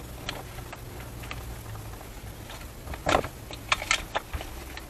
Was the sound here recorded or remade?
recorded